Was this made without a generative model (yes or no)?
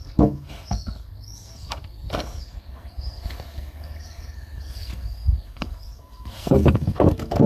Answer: no